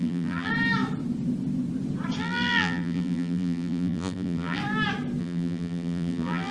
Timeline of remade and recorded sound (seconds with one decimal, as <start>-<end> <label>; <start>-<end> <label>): 0.0-0.5 remade; 0.5-2.2 recorded; 2.2-4.6 remade; 4.6-5.2 recorded; 5.2-6.5 remade